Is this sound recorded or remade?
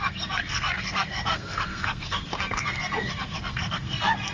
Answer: remade